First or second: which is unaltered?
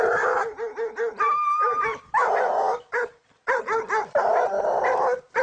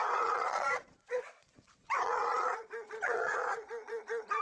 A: first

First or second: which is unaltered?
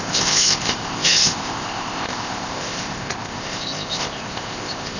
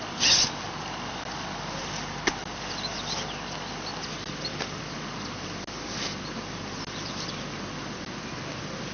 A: second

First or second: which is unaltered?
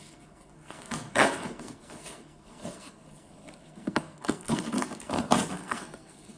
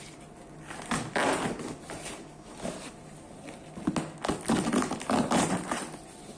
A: second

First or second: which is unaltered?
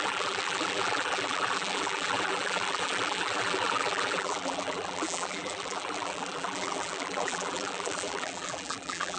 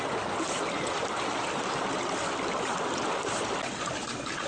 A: second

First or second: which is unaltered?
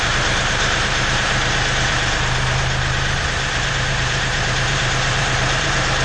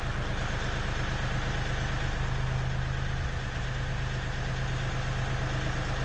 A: second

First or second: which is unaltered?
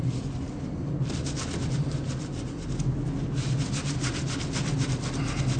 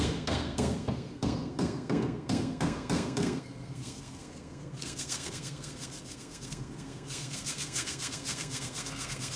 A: first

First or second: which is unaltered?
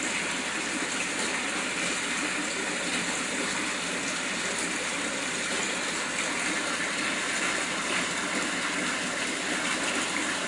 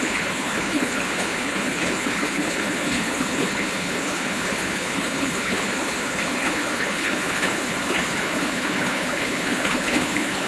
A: first